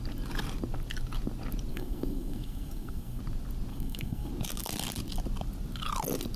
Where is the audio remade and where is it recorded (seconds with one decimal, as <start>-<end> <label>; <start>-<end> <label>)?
0.0-1.7 recorded; 1.7-3.2 remade; 3.2-3.7 recorded; 3.7-4.3 remade; 4.3-6.4 recorded